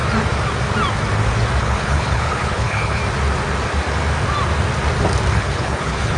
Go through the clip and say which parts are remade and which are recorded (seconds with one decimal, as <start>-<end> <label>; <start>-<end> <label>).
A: 0.0-1.6 recorded; 1.6-3.0 remade; 3.0-5.3 recorded; 5.3-6.2 remade